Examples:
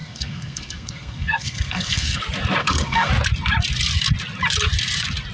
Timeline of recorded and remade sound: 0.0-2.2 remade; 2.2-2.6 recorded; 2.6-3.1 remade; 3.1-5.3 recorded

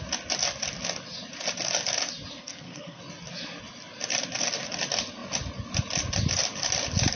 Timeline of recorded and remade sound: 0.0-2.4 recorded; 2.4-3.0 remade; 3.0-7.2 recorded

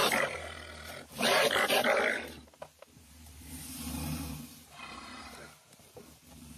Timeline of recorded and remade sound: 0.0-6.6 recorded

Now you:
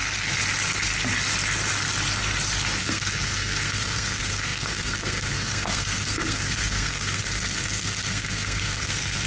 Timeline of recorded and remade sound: 0.0-2.8 recorded; 2.8-9.3 remade

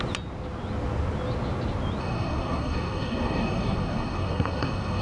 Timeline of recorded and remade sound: 0.0-2.0 recorded; 2.0-5.0 remade

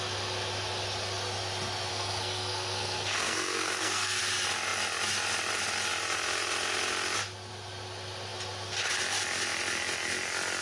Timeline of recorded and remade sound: 0.0-1.9 recorded; 1.9-4.2 remade; 4.2-10.6 recorded

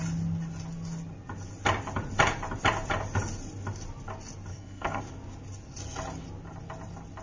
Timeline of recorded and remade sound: 0.0-4.5 recorded; 4.5-5.0 remade; 5.0-7.2 recorded